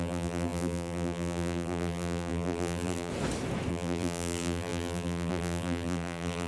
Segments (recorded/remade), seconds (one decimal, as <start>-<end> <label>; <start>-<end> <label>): 0.0-3.1 remade; 3.1-3.7 recorded; 3.7-6.5 remade